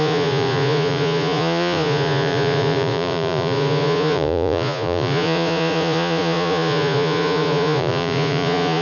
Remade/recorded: remade